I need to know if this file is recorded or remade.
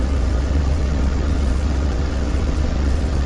remade